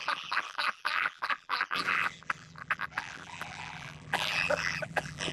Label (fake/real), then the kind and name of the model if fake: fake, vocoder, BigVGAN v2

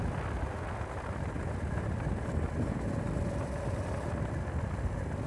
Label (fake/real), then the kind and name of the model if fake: real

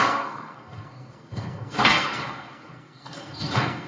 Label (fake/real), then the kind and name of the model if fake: fake, codec, SNAC